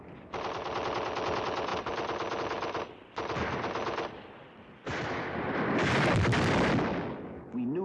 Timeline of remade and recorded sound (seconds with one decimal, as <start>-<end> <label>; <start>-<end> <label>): 0.0-7.8 recorded